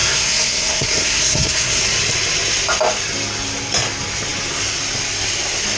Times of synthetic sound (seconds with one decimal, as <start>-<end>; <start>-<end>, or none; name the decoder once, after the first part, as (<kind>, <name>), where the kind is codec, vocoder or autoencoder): 0.0-1.8 (codec, SNAC)